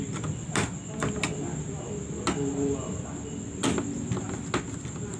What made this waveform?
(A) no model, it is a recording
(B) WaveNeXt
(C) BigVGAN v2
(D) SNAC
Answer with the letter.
A